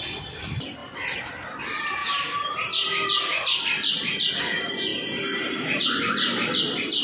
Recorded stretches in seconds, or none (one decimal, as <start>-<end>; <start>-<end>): 4.9-5.8